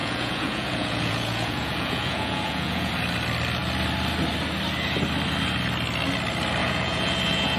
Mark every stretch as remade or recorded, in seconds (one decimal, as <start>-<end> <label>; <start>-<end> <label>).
0.0-2.9 remade; 2.9-6.6 recorded; 6.6-7.6 remade

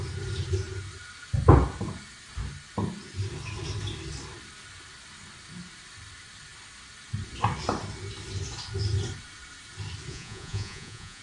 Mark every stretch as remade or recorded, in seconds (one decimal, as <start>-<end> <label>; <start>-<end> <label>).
0.0-10.1 recorded; 10.1-11.2 remade

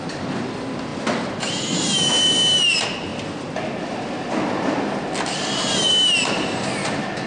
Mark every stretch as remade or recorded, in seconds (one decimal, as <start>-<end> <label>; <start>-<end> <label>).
0.0-7.3 recorded

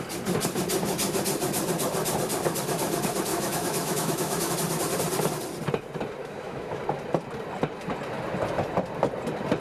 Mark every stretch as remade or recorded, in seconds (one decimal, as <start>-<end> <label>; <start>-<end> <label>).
0.0-3.3 recorded; 3.3-4.5 remade; 4.5-6.2 recorded; 6.2-6.8 remade; 6.8-9.6 recorded